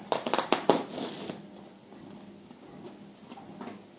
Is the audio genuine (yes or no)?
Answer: yes